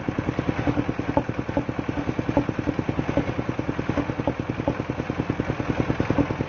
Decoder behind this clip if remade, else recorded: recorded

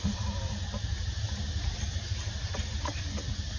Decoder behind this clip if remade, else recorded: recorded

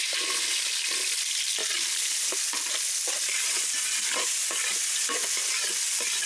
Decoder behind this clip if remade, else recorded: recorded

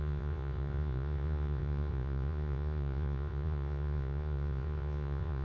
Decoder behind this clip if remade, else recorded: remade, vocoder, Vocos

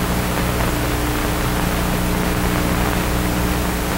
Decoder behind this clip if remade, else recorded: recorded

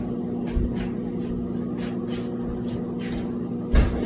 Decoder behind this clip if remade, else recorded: recorded